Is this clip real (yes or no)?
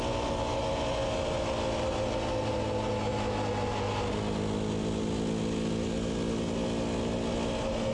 yes